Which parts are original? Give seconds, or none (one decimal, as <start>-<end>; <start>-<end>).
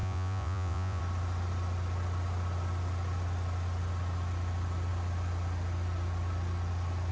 1.0-7.1